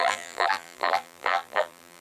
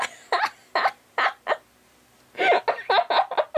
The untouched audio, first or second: second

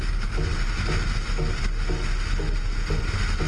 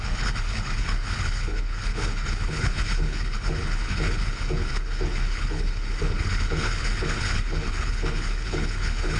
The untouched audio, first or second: first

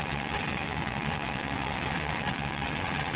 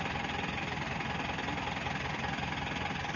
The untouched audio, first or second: second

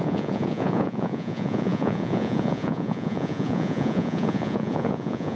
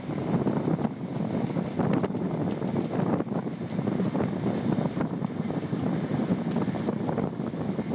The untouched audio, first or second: second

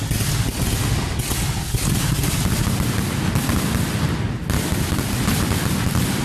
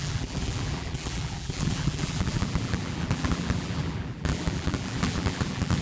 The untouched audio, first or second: first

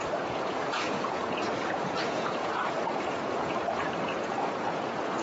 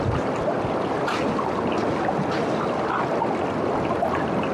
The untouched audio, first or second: second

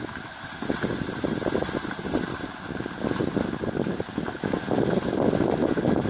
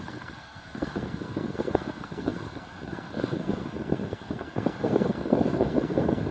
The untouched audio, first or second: first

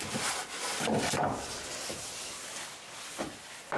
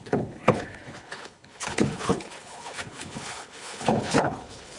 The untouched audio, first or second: first